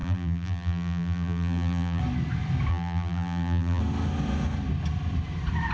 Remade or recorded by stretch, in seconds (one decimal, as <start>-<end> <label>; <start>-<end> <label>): 0.0-2.0 remade; 2.0-2.7 recorded; 2.7-3.8 remade; 3.8-5.7 recorded